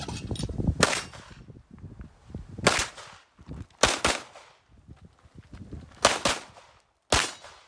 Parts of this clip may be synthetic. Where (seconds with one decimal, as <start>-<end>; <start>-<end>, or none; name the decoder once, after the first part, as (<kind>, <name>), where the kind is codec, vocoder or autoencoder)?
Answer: none